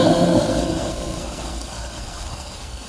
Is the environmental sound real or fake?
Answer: fake